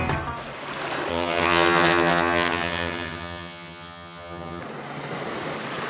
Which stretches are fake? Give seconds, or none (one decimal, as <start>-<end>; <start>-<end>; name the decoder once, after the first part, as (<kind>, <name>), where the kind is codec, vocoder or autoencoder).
1.1-4.6 (vocoder, HiFi-GAN)